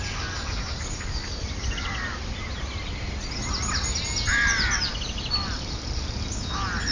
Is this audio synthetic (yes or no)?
no